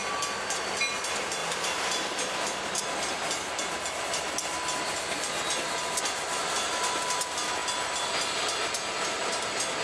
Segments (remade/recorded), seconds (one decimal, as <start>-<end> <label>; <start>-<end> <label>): 0.0-9.8 recorded